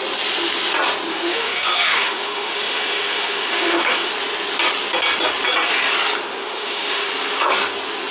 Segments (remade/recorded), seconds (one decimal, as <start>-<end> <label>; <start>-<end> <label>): 0.0-1.1 recorded; 1.1-4.1 remade; 4.1-6.4 recorded; 6.4-7.1 remade; 7.1-8.1 recorded